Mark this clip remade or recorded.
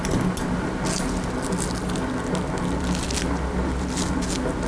recorded